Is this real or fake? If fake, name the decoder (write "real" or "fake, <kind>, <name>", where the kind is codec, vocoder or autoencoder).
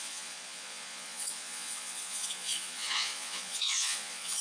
fake, vocoder, Vocos